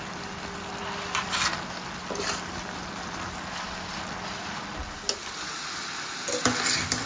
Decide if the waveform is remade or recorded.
recorded